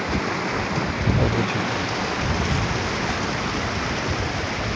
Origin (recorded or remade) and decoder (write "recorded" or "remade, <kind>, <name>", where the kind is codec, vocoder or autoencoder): recorded